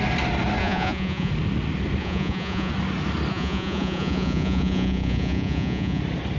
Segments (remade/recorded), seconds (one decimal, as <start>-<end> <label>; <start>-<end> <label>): 0.0-0.6 recorded; 0.6-1.3 remade; 1.3-2.0 recorded; 2.0-2.7 remade; 2.7-3.3 recorded; 3.3-6.0 remade; 6.0-6.4 recorded